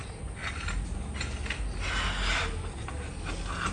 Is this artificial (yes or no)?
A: no